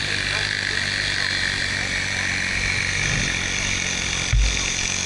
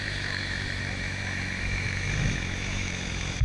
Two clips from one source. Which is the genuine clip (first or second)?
first